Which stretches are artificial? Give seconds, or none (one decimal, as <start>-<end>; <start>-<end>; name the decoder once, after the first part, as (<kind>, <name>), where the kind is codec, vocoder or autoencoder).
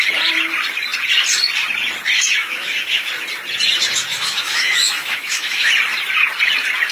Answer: 2.4-3.1 (autoencoder, DAC-VAE); 4.1-5.7